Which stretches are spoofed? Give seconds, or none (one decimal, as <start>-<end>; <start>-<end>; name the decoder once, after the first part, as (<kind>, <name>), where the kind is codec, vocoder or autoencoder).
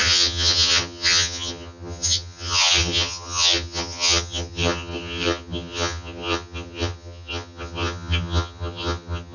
0.0-9.3 (vocoder, HiFi-GAN)